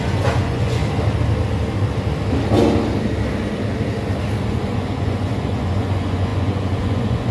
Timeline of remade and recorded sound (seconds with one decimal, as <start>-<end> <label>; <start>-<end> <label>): 0.0-0.8 remade; 0.8-4.5 recorded; 4.5-7.3 remade